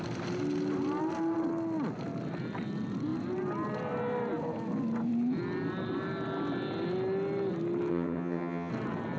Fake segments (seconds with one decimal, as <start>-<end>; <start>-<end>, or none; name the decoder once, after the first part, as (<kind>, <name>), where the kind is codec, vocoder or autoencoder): 7.9-8.7 (vocoder, HiFi-GAN)